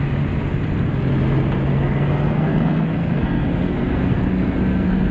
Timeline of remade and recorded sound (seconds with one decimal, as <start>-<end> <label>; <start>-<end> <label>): 0.0-1.7 recorded; 1.7-5.1 remade

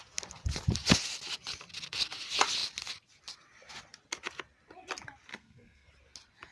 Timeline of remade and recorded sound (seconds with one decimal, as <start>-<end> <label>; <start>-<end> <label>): 0.0-5.3 recorded; 5.3-5.9 remade; 5.9-6.5 recorded